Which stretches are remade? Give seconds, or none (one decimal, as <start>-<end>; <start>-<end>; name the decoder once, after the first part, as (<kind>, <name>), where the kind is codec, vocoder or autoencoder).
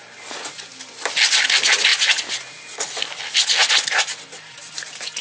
none